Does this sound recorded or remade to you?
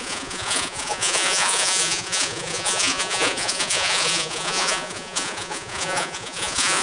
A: remade